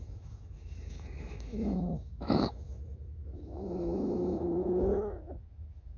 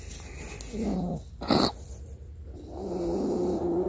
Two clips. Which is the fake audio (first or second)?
first